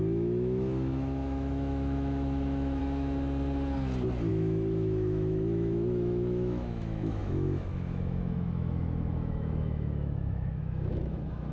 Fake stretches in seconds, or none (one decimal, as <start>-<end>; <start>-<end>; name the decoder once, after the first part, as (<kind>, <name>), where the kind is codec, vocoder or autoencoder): 0.0-2.8 (autoencoder, DAC-VAE); 4.3-11.5